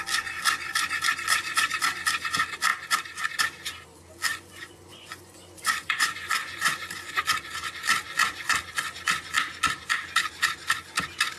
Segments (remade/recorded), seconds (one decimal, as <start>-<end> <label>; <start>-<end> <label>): 0.0-4.3 recorded; 4.3-7.2 remade; 7.2-11.4 recorded